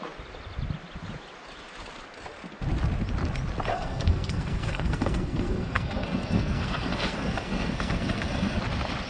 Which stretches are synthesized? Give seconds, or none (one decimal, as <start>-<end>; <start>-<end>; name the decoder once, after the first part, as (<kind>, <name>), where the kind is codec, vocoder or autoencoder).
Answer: 3.7-8.6 (codec, SNAC)